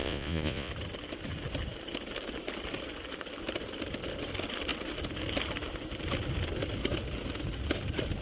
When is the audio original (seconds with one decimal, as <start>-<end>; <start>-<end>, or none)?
0.7-8.2